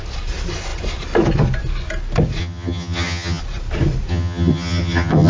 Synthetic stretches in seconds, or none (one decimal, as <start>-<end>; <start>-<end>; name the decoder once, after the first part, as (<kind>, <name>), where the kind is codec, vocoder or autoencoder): 2.4-3.4 (vocoder, HiFi-GAN); 4.1-5.3